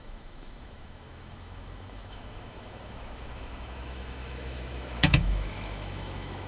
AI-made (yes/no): yes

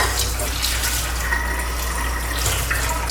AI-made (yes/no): no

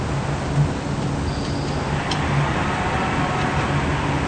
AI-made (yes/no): no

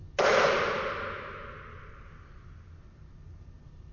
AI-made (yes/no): no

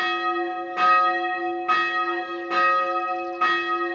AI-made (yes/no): no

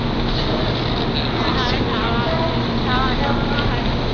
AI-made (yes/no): no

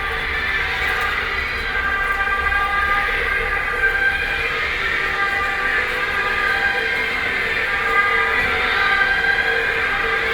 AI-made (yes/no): no